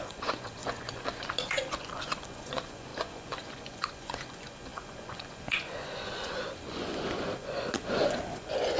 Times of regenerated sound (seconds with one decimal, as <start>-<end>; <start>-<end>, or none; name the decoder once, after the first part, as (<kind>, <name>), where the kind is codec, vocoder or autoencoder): 0.0-8.8 (vocoder, Vocos)